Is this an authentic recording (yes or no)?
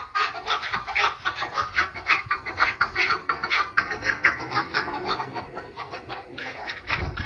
no